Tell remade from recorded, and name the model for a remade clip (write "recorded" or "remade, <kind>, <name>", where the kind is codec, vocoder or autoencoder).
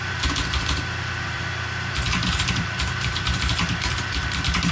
remade, vocoder, BigVGAN v2